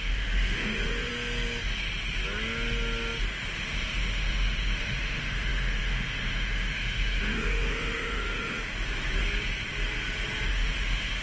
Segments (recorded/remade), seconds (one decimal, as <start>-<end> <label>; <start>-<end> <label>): 0.0-1.1 remade; 1.1-3.6 recorded; 3.6-8.7 remade; 8.7-10.5 recorded; 10.5-11.2 remade